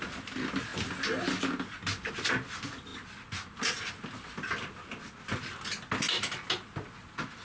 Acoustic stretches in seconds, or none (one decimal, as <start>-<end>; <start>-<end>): 0.0-7.4